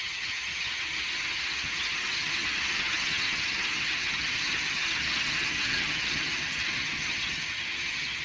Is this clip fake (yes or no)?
yes